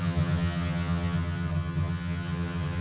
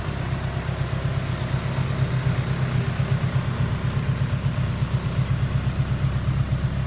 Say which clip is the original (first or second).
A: second